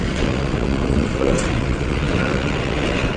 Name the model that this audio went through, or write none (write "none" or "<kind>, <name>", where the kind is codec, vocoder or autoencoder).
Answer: vocoder, WaveNeXt